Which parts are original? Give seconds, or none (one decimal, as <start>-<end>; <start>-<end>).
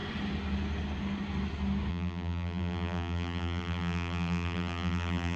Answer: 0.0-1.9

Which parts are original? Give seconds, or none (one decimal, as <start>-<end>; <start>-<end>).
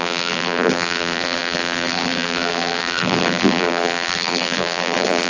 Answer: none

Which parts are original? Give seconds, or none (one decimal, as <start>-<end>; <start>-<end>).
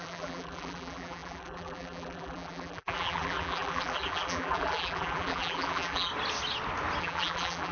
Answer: 6.1-7.0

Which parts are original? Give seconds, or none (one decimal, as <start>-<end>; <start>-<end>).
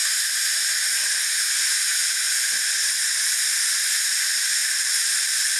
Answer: 0.0-4.6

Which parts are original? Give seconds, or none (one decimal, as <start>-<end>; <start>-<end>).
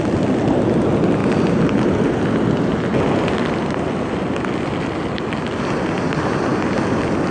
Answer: 0.0-7.3